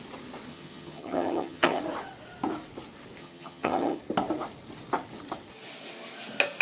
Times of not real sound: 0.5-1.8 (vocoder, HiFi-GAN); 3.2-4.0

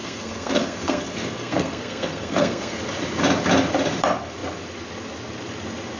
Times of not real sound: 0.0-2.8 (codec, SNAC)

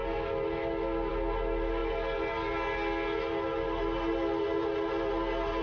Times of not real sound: none

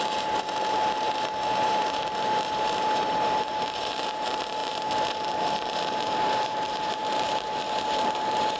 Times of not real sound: 0.0-8.6 (vocoder, BigVGAN v2)

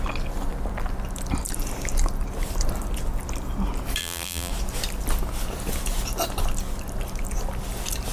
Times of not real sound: 4.0-4.5 (vocoder, BigVGAN v2)

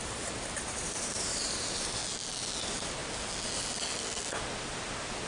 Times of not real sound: 0.0-2.0 (vocoder, BigVGAN v2); 2.6-3.0

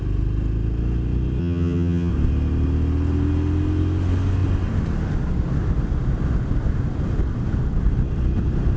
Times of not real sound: 1.4-2.1 (vocoder, HiFi-GAN)

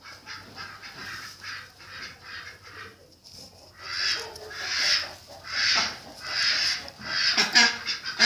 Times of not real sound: 0.0-3.0 (vocoder, BigVGAN v2)